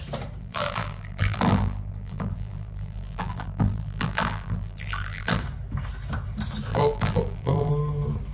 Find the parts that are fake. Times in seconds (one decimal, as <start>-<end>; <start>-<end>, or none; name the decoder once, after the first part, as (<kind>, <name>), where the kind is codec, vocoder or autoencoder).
0.4-5.4 (vocoder, BigVGAN v2); 6.7-7.7